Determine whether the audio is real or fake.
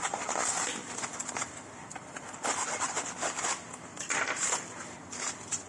real